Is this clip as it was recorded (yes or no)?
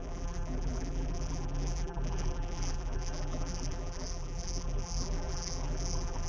no